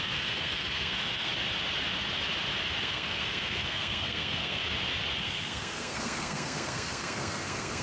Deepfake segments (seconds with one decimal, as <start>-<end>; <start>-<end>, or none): 0.0-1.3; 2.8-4.6; 5.2-7.8